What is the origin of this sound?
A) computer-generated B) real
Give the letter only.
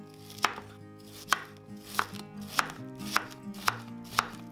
B